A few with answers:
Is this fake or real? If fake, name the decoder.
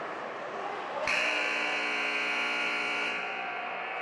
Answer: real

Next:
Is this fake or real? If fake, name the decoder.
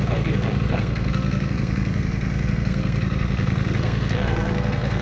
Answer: fake, codec, SNAC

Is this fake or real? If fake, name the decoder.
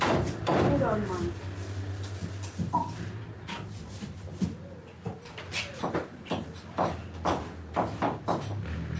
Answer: real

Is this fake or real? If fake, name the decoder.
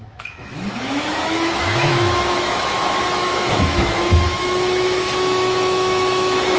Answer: fake, autoencoder, DAC-VAE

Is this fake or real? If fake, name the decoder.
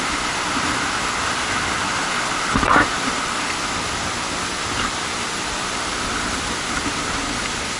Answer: real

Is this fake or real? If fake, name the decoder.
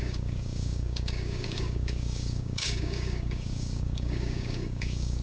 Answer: fake, codec, DAC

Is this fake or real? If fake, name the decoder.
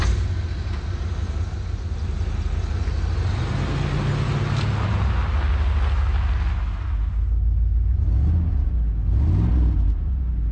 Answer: real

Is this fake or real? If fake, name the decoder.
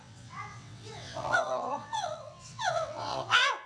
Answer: fake, vocoder, WaveNeXt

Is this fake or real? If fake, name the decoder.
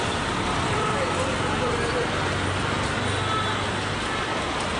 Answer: real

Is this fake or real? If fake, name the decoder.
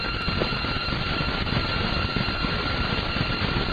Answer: real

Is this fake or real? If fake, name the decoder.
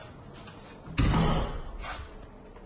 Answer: real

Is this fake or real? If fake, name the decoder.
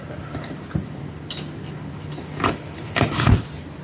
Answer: real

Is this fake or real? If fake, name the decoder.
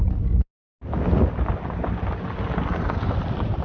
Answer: real